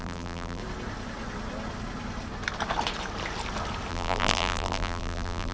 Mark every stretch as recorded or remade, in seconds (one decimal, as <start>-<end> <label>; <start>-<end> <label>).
0.0-0.6 remade; 0.6-3.9 recorded; 3.9-5.5 remade